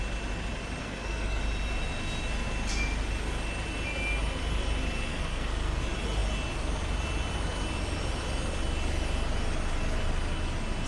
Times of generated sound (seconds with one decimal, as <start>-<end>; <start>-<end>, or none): 0.8-1.4; 5.1-5.8